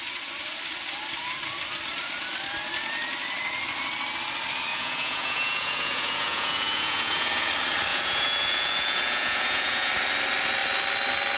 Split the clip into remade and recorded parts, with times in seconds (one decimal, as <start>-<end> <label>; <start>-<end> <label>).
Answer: 0.0-4.7 recorded; 4.7-7.5 remade; 7.5-7.9 recorded; 7.9-9.9 remade; 9.9-11.4 recorded